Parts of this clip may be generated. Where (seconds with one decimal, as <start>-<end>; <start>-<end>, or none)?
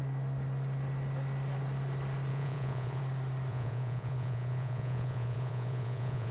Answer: 2.3-3.0; 3.5-6.3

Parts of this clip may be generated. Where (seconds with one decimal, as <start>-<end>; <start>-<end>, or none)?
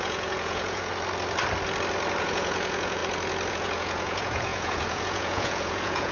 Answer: 0.0-0.9; 2.2-3.0; 3.5-6.1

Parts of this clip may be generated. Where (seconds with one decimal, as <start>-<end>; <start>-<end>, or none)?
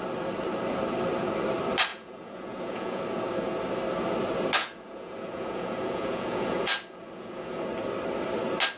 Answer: 1.9-3.0; 4.6-7.6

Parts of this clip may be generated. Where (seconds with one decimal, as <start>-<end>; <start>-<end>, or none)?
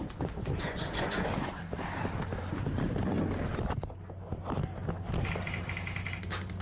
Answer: 0.5-1.6